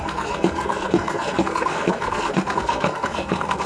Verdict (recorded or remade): remade